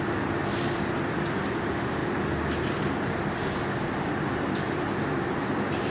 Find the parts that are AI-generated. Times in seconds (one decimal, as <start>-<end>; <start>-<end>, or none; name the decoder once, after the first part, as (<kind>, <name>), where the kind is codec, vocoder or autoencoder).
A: none